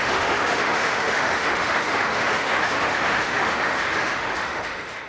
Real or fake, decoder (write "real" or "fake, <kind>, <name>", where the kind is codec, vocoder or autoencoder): fake, autoencoder, DAC-VAE